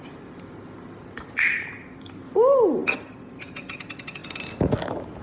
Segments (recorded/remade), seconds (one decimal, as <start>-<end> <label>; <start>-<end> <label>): 0.0-5.2 recorded